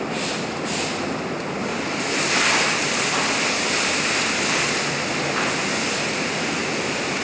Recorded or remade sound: recorded